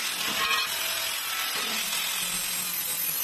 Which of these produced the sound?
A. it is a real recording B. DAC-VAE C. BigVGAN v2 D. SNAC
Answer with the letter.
A